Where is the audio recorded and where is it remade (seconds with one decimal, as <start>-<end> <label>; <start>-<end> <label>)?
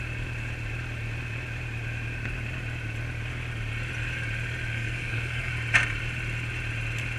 0.0-4.7 recorded; 4.7-5.5 remade; 5.5-7.2 recorded